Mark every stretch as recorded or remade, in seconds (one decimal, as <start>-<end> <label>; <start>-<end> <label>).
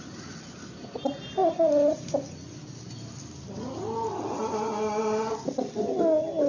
0.0-1.4 recorded; 1.4-2.1 remade; 2.1-6.5 recorded